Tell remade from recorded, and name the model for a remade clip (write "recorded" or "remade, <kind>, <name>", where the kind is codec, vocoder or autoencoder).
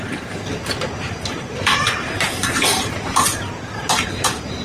remade, vocoder, BigVGAN v2